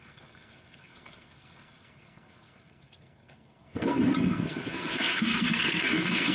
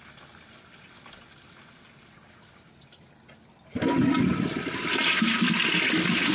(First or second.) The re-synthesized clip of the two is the first